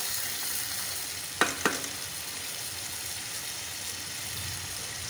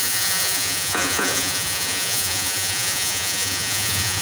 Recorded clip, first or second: first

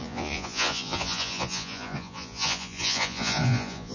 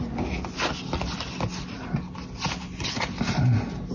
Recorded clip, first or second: second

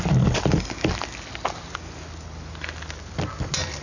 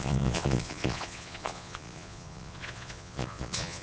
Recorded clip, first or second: first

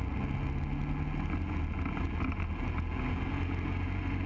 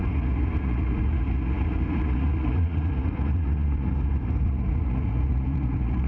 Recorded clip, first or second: first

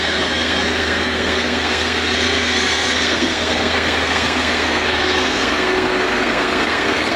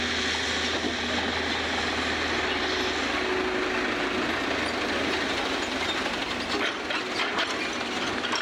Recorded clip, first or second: second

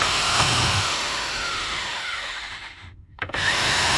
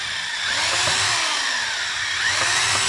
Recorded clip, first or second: second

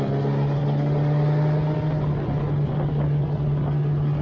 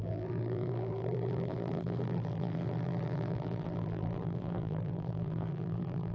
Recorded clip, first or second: first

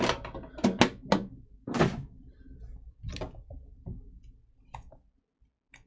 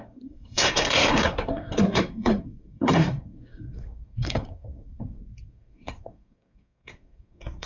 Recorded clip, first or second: first